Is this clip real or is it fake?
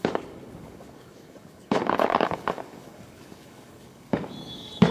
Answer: fake